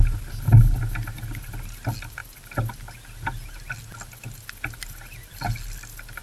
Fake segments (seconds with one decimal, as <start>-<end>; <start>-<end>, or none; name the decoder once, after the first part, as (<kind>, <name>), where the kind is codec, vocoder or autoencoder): none